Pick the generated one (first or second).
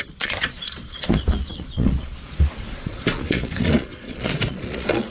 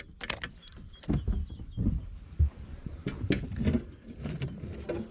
first